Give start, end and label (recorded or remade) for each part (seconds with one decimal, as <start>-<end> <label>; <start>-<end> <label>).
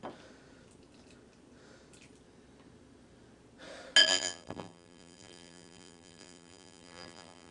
0.0-4.0 recorded; 4.0-7.5 remade